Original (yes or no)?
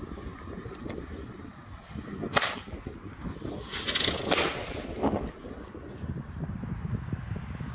yes